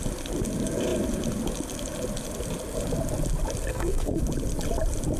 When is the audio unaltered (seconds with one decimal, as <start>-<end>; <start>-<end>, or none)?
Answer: 0.0-3.7; 4.2-5.2